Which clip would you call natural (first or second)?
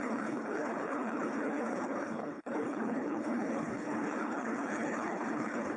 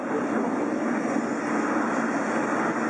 second